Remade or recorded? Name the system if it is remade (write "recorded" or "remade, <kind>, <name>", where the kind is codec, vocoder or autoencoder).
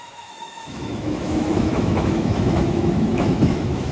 remade, autoencoder, DAC-VAE